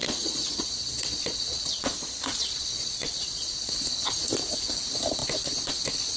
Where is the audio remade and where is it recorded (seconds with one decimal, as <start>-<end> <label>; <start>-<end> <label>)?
0.0-3.7 remade; 3.7-6.2 recorded

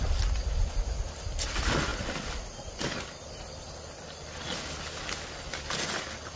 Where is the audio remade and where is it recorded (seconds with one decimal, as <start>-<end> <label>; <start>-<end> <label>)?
0.0-6.4 recorded

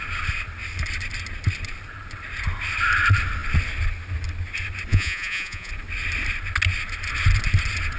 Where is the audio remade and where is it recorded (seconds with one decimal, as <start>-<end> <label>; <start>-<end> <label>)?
0.0-4.9 recorded; 4.9-5.7 remade; 5.7-8.0 recorded